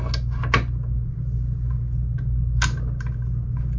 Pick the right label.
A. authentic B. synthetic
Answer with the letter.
A